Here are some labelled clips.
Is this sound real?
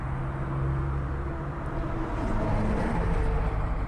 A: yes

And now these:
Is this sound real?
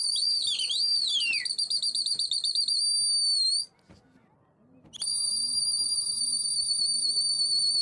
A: yes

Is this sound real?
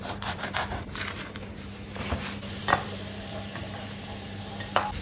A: no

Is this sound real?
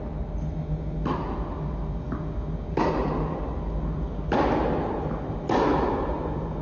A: yes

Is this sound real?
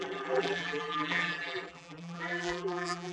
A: no